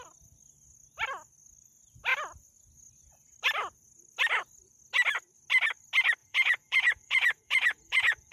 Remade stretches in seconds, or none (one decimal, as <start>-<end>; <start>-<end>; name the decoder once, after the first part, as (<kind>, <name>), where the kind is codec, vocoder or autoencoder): 6.2-8.3 (vocoder, Vocos)

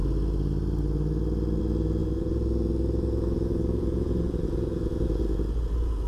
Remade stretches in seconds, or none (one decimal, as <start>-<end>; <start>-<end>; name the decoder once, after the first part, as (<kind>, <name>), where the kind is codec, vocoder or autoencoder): 2.0-6.1 (vocoder, Vocos)

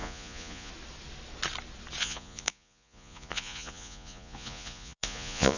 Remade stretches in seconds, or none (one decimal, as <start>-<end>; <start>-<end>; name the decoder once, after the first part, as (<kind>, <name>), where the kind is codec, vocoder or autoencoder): 0.0-0.7 (vocoder, Vocos); 2.0-5.6

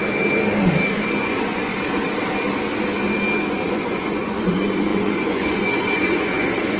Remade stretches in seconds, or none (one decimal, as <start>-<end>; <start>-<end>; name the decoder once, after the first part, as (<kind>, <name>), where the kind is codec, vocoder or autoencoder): 1.2-1.7 (vocoder, Vocos); 3.5-6.8

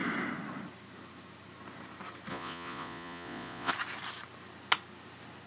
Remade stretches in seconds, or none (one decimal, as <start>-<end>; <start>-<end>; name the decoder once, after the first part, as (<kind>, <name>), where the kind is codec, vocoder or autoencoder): 2.3-3.7 (vocoder, Vocos)

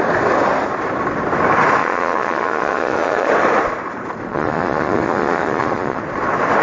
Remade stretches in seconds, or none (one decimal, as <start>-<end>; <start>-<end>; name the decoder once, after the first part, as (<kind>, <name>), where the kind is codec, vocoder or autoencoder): 1.8-3.3 (vocoder, Vocos); 4.3-6.0

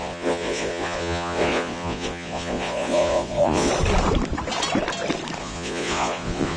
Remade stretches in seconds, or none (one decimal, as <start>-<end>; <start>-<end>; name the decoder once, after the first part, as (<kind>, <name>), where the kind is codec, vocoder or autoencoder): 0.0-3.7 (vocoder, Vocos); 5.4-6.6

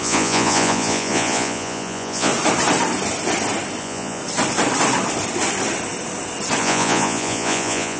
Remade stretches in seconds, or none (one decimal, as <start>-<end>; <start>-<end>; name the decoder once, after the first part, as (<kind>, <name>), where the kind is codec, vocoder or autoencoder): 0.0-2.3 (vocoder, Vocos); 3.8-4.2; 6.6-8.0